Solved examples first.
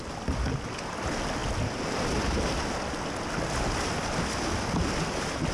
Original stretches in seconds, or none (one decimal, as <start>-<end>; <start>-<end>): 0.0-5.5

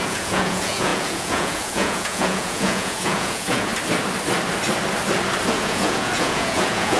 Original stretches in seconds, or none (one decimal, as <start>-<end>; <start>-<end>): 3.7-5.5

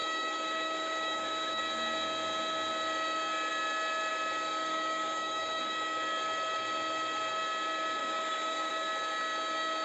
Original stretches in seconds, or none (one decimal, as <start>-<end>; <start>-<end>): 1.6-4.7; 5.6-8.0; 8.7-9.8

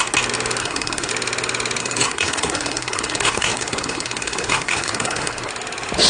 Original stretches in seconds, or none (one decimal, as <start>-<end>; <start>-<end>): 0.0-0.6; 1.1-1.8; 5.5-6.1

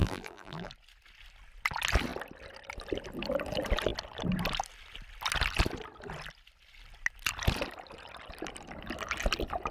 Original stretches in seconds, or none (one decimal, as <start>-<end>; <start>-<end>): 0.7-9.7